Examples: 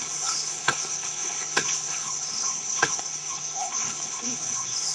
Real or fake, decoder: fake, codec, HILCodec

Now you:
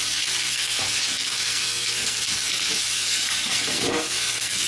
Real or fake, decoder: fake, codec, SNAC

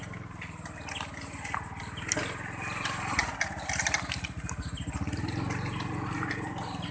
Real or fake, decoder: real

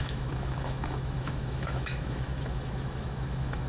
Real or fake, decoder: fake, autoencoder, DAC-VAE